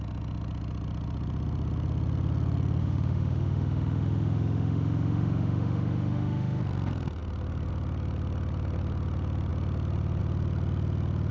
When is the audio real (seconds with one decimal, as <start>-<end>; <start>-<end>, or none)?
0.0-2.8; 6.6-11.3